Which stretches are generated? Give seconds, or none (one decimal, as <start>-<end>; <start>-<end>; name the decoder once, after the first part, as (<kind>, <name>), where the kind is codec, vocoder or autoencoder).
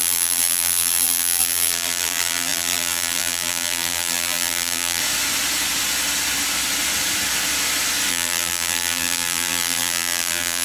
0.0-5.0 (vocoder, BigVGAN v2); 8.1-10.6